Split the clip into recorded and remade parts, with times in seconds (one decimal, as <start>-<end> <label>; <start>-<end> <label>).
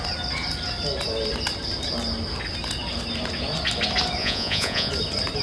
0.0-4.2 recorded; 4.2-4.9 remade; 4.9-5.4 recorded